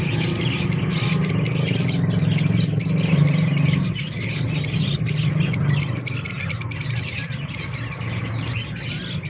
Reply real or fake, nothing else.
real